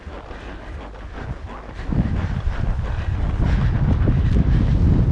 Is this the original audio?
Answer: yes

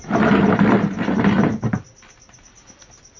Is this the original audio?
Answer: yes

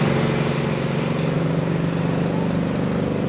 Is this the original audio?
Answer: yes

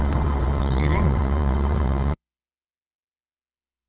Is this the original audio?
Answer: no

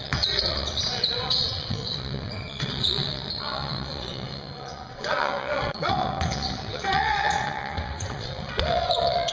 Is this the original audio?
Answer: no